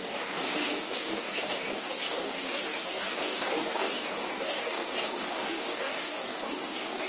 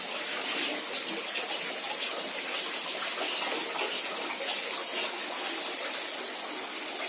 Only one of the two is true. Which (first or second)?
second